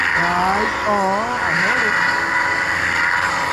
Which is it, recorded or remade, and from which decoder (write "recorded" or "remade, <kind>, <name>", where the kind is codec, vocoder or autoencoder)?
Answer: recorded